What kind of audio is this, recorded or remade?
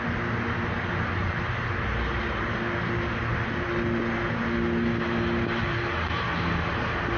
recorded